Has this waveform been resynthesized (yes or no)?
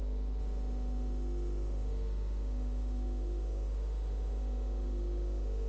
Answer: yes